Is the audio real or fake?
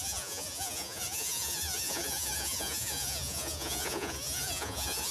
fake